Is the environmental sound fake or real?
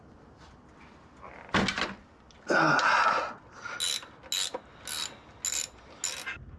real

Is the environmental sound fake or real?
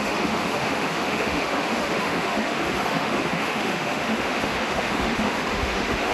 fake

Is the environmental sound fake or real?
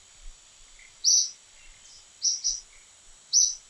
real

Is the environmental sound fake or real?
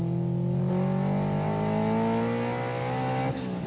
real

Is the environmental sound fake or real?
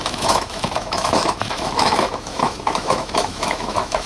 fake